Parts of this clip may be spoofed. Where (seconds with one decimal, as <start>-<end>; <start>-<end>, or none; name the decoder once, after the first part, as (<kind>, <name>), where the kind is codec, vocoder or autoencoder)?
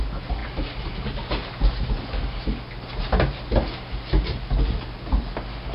none